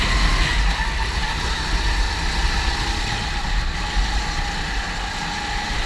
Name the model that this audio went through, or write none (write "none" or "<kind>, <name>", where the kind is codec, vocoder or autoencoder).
none